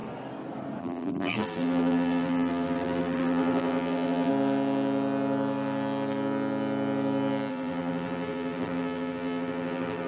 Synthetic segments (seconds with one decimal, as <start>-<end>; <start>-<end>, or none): 0.8-4.3; 7.5-10.1